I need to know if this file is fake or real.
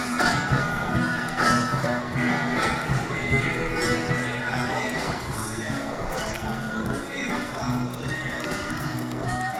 fake